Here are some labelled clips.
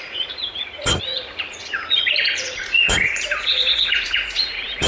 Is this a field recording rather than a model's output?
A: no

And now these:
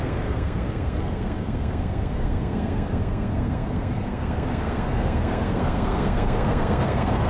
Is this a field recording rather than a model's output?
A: no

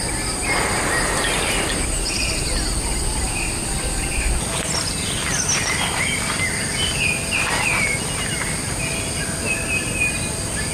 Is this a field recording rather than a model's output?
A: yes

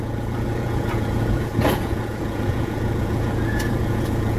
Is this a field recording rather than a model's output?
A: no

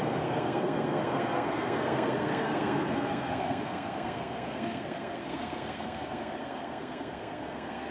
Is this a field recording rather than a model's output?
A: no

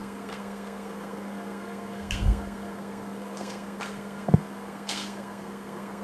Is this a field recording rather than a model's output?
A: no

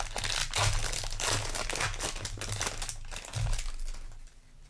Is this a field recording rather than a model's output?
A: yes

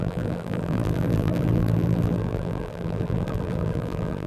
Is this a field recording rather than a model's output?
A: no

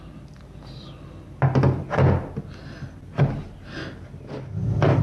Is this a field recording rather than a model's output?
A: yes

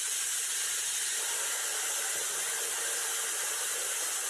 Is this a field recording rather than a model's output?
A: yes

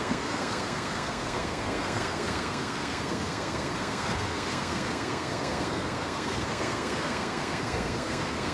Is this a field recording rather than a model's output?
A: no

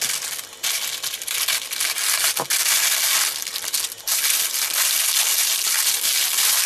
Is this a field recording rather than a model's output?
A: yes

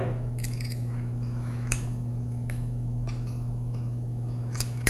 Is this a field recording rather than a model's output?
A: no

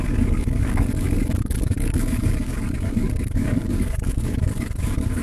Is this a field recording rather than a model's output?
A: no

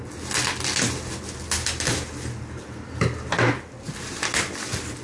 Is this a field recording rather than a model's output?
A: yes